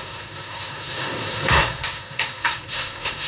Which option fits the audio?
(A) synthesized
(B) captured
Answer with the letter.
A